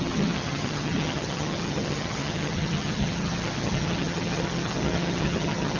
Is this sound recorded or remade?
remade